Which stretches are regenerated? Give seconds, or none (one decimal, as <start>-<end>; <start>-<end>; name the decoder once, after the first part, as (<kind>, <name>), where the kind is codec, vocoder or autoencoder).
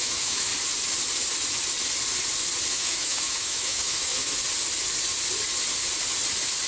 0.0-0.5 (autoencoder, DAC-VAE); 2.7-4.1